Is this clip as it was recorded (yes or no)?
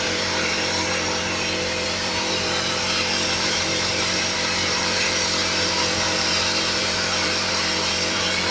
no